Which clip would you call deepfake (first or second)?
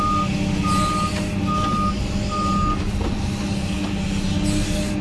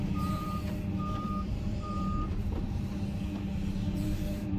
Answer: second